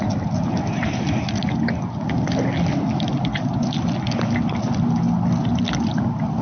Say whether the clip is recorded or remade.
recorded